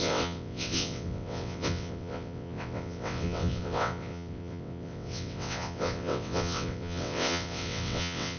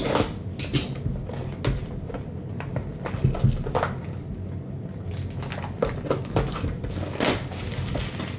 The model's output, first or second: first